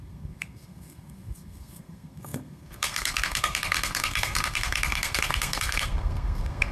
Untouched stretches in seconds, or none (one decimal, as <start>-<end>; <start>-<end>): none